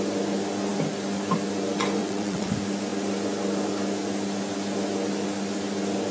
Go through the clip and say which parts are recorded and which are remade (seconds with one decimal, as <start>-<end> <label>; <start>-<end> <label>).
0.0-2.0 recorded; 2.0-2.5 remade; 2.5-6.1 recorded

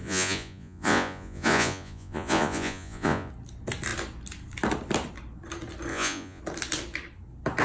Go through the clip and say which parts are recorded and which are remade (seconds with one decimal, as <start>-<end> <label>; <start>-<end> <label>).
0.0-3.3 remade; 3.3-5.9 recorded; 5.9-6.4 remade; 6.4-7.6 recorded

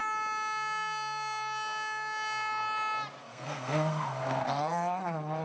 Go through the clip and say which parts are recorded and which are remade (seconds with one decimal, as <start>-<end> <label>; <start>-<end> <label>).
0.0-3.2 recorded; 3.2-5.4 remade